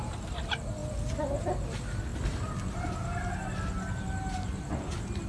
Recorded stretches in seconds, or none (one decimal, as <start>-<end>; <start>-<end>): 0.0-5.3